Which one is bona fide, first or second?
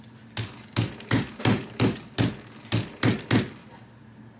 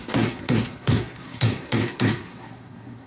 first